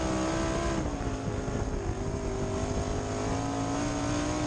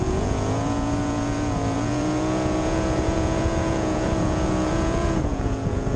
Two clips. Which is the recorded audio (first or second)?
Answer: first